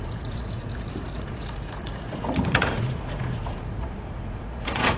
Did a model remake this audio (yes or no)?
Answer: yes